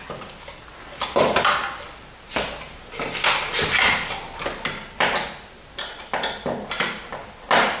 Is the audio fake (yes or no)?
no